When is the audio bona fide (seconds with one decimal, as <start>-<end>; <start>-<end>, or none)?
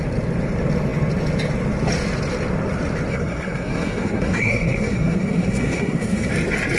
0.0-3.1; 6.3-6.8